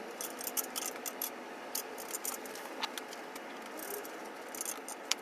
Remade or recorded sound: recorded